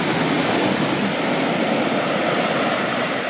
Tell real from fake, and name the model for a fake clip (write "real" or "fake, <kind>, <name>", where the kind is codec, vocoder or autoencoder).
real